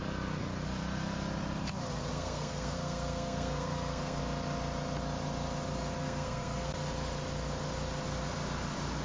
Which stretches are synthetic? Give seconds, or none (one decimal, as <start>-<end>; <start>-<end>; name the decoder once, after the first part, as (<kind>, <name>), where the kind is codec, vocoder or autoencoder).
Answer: 2.1-4.2 (codec, SNAC); 6.0-6.7